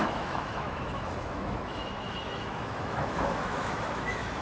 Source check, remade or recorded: remade